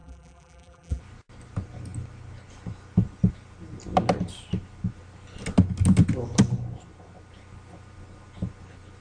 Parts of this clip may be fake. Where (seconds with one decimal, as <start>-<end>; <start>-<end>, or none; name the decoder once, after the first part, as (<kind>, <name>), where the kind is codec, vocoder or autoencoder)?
0.0-1.0 (vocoder, BigVGAN v2)